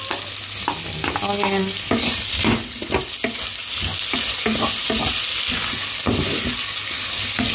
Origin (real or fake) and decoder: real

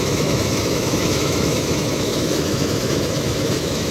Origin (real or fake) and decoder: fake, autoencoder, DAC-VAE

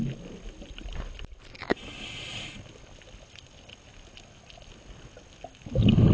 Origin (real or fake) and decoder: real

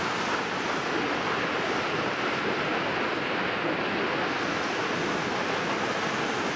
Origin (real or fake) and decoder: real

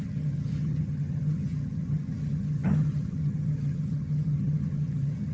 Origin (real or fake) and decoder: fake, vocoder, HiFi-GAN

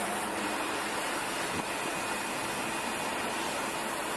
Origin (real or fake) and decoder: real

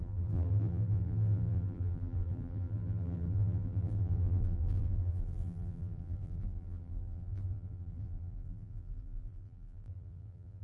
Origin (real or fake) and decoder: fake, vocoder, BigVGAN v2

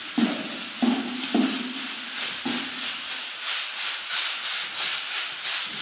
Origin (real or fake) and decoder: real